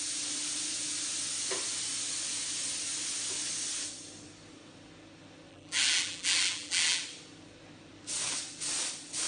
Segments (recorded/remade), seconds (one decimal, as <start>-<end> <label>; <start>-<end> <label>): 0.0-5.5 recorded; 5.5-7.0 remade; 7.0-9.3 recorded